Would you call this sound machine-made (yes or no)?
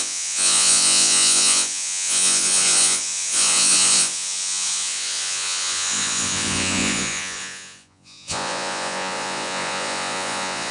yes